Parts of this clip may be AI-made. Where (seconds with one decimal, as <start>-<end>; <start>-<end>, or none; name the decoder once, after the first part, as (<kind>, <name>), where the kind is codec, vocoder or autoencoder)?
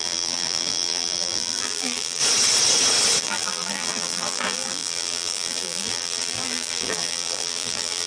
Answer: 0.0-2.2 (vocoder, BigVGAN v2); 3.2-8.1